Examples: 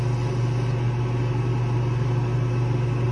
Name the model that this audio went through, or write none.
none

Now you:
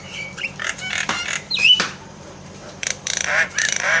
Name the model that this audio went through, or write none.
vocoder, BigVGAN v2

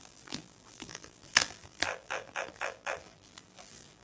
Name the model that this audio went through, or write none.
vocoder, BigVGAN v2